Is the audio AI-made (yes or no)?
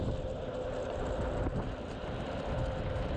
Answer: no